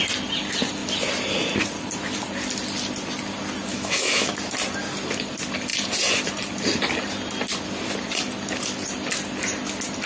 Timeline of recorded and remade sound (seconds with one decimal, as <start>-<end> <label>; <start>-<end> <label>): 0.0-3.7 recorded; 3.7-4.3 remade; 4.3-10.1 recorded